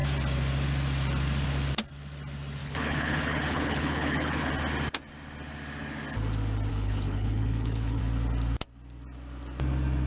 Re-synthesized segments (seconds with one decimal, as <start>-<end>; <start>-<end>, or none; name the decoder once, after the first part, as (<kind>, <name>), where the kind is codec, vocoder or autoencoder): 2.6-4.5 (codec, HILCodec); 6.7-8.0